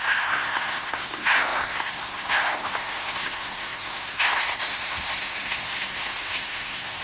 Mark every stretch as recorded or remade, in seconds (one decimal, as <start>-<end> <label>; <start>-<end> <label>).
0.0-7.0 remade